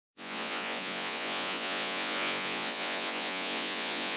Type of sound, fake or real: fake